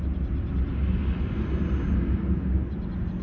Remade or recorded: recorded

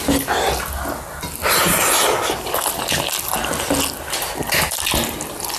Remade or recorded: recorded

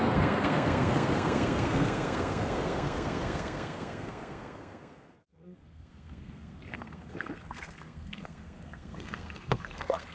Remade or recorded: remade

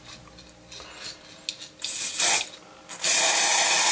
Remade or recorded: recorded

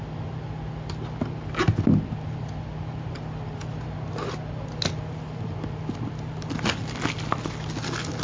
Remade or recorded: recorded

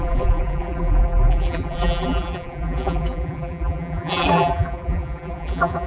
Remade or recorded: remade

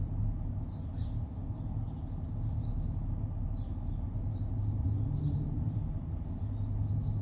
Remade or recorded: recorded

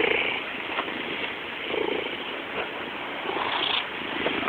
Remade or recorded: recorded